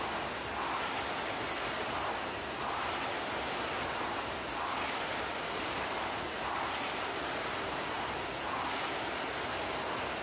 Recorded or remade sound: recorded